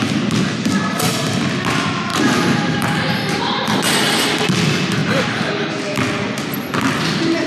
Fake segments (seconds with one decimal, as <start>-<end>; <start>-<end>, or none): 2.1-3.4; 5.0-5.5